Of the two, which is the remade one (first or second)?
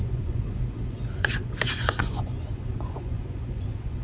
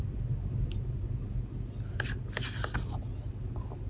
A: first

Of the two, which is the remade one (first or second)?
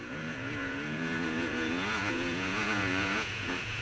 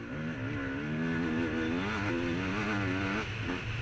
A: first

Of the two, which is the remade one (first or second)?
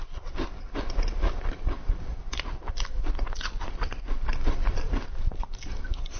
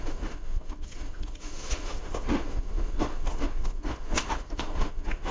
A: second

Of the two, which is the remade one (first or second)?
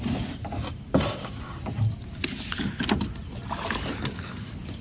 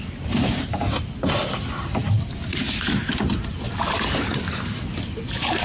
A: second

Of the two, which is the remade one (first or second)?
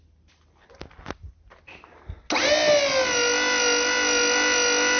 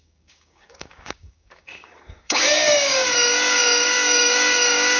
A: second